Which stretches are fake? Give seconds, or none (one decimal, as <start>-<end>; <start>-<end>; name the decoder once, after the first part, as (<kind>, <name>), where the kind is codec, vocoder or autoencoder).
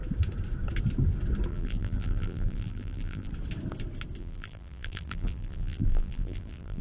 1.5-3.3 (vocoder, BigVGAN v2); 4.2-6.8